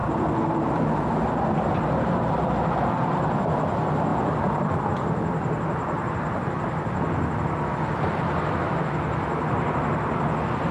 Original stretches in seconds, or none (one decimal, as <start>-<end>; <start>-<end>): 0.0-4.1; 8.7-10.7